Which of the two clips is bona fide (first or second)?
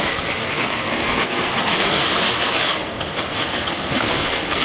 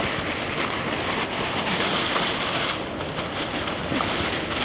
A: second